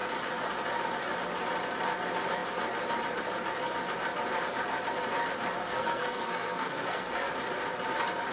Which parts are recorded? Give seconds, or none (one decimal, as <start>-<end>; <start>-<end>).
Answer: 0.0-5.6; 7.3-8.3

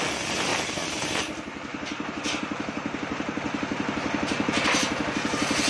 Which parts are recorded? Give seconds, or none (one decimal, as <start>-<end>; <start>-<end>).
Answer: 0.0-5.7

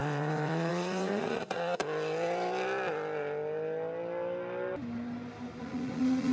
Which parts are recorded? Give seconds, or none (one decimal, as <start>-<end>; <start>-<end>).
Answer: 1.8-5.6